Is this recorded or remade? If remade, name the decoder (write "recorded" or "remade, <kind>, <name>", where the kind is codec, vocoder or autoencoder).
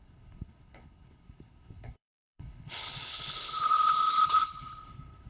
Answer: remade, codec, HILCodec